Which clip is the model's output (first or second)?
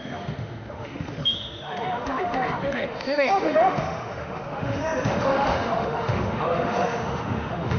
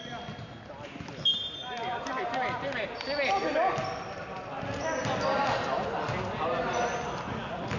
first